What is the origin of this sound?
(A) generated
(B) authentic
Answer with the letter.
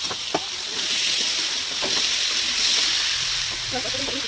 B